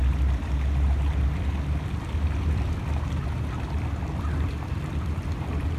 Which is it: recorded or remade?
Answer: recorded